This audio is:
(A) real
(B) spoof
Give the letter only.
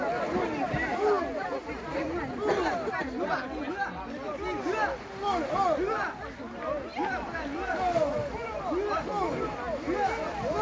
A